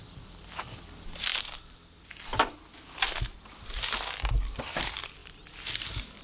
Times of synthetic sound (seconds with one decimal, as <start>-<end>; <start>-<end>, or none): none